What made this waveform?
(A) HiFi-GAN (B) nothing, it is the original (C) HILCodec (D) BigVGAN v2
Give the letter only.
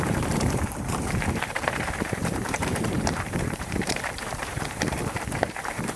D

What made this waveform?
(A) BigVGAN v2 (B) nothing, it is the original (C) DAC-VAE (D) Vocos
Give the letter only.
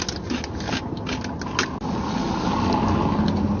B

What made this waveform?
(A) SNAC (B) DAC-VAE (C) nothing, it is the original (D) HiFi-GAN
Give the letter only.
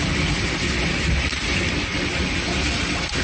C